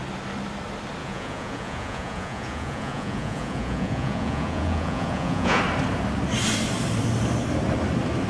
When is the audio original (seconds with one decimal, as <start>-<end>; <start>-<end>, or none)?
0.0-1.0; 5.6-8.3